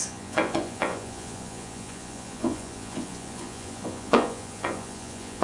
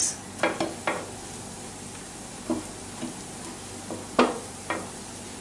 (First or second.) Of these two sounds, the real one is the second